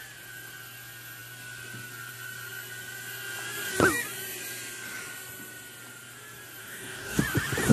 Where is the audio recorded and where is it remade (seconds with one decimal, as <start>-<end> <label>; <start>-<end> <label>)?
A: 0.0-6.6 recorded; 6.6-7.2 remade; 7.2-7.7 recorded